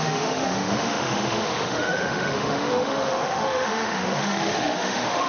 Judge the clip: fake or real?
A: fake